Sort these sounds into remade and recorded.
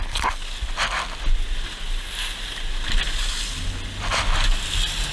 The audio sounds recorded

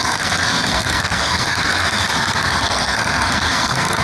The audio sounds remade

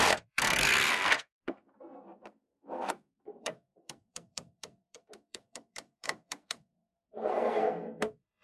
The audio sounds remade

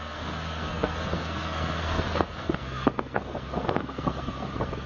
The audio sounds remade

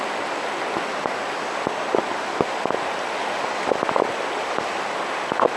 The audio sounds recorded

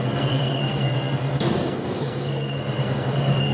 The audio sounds remade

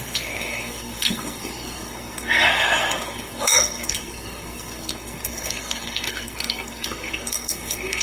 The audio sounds remade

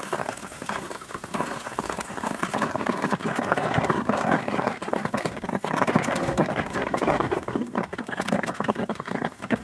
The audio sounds remade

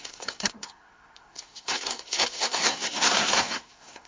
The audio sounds remade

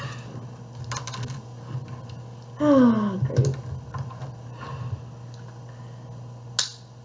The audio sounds recorded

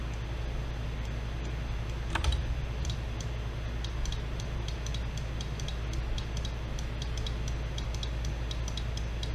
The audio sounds recorded